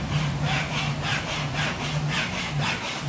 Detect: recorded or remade recorded